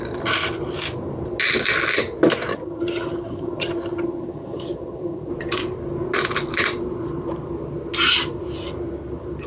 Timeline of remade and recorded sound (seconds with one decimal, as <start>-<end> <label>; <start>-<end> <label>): 0.0-2.5 recorded; 2.5-5.3 remade; 5.3-9.5 recorded